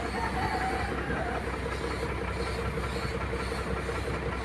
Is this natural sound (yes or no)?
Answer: yes